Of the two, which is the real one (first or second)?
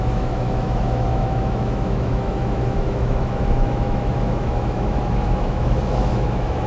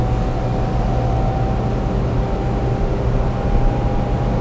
second